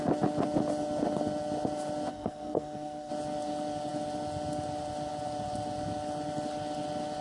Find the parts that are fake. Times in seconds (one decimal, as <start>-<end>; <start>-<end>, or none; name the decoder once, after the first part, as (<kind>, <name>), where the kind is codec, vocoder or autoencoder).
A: 2.1-3.1 (codec, SNAC)